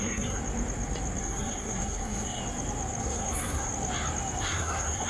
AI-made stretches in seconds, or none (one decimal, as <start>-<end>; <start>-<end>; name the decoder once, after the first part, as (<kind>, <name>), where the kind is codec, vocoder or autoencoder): 0.0-0.4 (codec, SNAC); 1.2-2.4; 3.0-3.7; 4.4-5.1

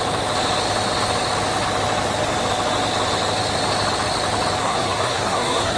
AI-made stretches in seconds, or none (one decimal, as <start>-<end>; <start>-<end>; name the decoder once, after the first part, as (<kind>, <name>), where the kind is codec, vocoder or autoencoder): 4.6-5.8 (codec, SNAC)

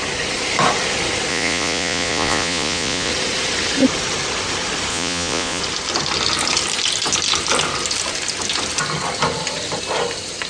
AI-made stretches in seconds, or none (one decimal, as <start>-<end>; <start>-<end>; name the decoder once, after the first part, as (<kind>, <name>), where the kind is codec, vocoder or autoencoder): 1.3-3.1 (vocoder, Vocos); 4.9-5.6

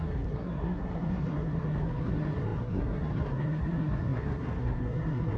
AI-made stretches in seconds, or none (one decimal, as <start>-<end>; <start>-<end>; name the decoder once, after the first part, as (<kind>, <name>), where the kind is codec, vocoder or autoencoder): 0.0-5.4 (codec, SNAC)

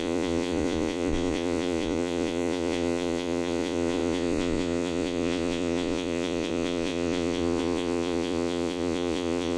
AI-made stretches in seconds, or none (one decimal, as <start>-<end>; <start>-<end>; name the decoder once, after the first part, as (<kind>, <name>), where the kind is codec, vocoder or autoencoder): 0.0-9.6 (vocoder, Vocos)